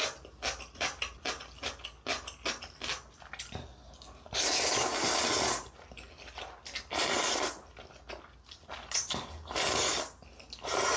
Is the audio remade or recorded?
recorded